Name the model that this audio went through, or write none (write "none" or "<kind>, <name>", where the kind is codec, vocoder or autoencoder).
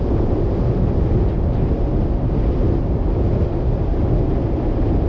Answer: none